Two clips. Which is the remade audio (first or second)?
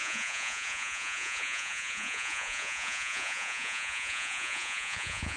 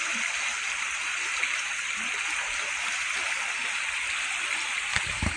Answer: first